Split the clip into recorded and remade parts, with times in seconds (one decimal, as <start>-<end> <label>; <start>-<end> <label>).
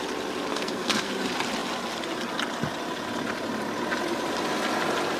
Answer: 0.0-0.5 recorded; 0.5-1.1 remade; 1.1-5.2 recorded